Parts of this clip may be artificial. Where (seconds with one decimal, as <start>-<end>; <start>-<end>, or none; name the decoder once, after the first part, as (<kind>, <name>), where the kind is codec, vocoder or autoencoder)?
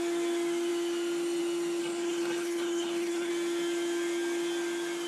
1.8-3.3 (codec, SNAC)